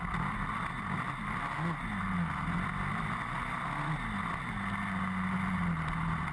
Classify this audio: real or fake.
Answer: real